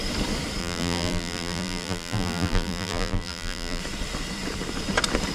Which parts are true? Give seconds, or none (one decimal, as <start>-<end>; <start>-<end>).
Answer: 0.0-0.6; 3.8-5.3